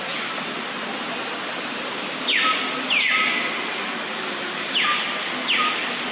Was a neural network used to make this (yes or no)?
no